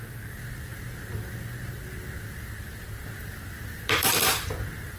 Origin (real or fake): fake